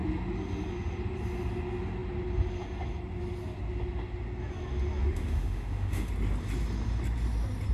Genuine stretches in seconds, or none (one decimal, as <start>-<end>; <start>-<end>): 0.0-5.0; 6.1-7.7